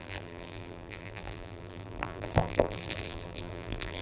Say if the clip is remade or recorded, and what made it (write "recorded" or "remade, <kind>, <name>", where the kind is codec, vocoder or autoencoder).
remade, vocoder, BigVGAN v2